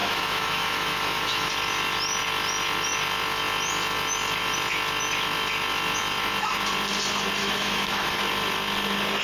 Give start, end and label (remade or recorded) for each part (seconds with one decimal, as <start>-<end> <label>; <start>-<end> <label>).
0.0-1.5 remade; 1.5-7.4 recorded; 7.4-8.2 remade; 8.2-9.2 recorded